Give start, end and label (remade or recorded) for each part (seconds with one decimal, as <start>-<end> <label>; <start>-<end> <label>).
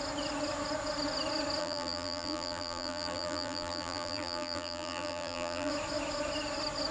0.0-1.6 recorded; 1.6-5.7 remade; 5.7-6.9 recorded